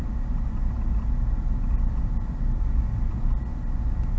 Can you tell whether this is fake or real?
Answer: real